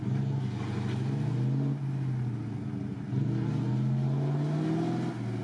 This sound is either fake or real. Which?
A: real